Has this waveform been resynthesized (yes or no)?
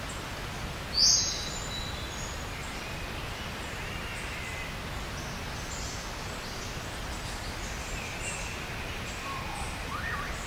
no